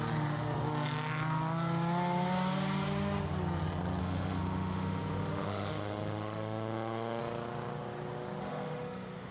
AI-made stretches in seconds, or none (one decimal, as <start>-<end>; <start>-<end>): 4.0-7.2; 8.4-9.3